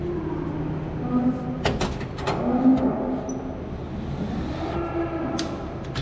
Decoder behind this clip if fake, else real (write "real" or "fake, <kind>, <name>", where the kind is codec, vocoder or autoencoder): real